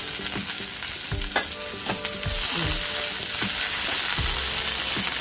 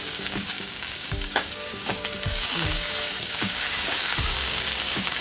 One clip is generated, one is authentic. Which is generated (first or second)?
second